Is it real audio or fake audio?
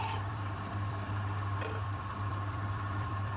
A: fake